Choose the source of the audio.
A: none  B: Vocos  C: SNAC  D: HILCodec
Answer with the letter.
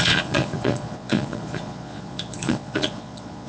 B